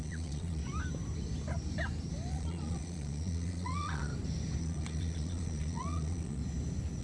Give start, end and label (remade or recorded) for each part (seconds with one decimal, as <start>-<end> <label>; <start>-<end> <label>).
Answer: 0.0-0.6 remade; 0.6-2.3 recorded; 2.3-4.1 remade; 4.1-4.6 recorded; 4.6-6.4 remade; 6.4-7.0 recorded